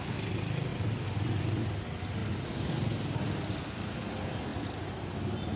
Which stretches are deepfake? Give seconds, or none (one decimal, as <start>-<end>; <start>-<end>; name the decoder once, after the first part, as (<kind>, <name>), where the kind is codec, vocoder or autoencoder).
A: none